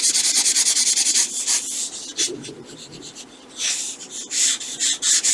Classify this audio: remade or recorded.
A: recorded